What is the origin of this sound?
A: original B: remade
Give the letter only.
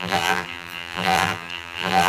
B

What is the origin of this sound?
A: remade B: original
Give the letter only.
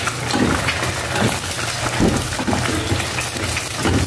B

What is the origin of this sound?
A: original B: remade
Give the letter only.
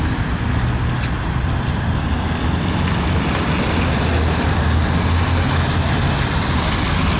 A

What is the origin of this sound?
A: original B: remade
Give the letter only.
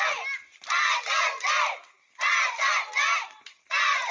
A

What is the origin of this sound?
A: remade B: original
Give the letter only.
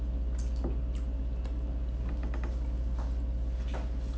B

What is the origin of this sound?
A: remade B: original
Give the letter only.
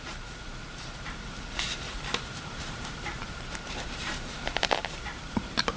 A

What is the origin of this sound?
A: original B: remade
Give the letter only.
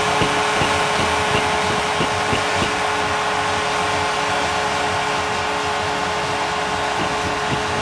A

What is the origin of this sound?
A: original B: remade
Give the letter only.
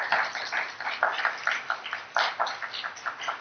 A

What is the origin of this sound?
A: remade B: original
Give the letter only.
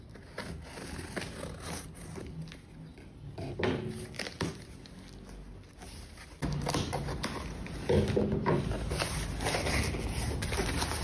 B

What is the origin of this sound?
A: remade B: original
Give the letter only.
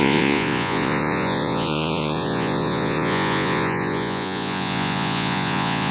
A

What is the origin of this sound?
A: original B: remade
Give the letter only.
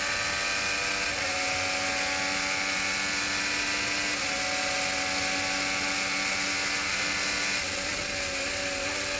A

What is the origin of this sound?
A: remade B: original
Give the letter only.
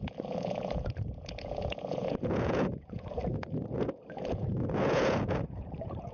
A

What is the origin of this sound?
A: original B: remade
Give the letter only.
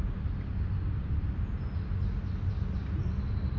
A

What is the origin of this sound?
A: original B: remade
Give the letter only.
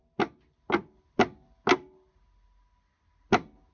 A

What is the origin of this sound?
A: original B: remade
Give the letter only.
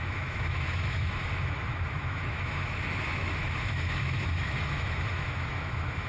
B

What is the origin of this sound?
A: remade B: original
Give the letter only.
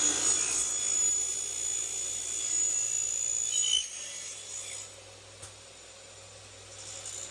B